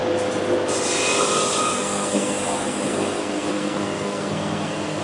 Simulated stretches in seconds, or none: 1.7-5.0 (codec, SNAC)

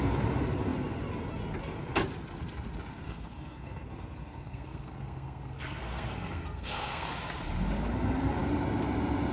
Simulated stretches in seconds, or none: 2.9-7.1 (codec, SNAC)

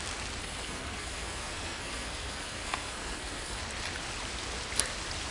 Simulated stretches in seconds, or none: 0.4-3.6 (codec, SNAC)

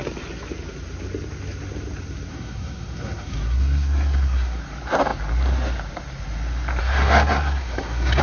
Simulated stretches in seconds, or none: 2.3-4.6 (codec, SNAC); 6.8-8.2

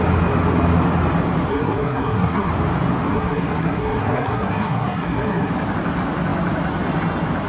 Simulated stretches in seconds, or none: 1.5-2.5 (codec, SNAC); 3.1-5.5

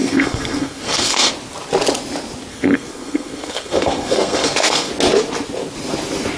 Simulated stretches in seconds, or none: 0.0-1.3 (codec, SNAC); 2.5-4.9